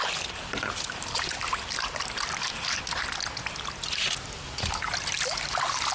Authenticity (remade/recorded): recorded